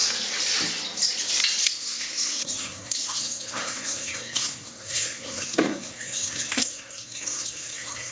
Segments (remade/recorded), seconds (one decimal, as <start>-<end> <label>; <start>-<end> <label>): 0.0-1.6 recorded; 1.6-8.1 remade